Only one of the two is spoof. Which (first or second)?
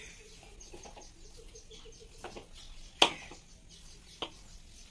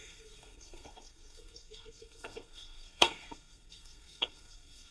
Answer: second